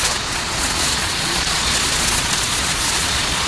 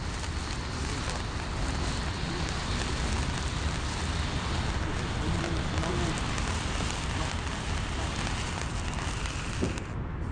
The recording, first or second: second